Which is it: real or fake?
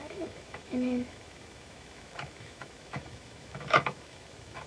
fake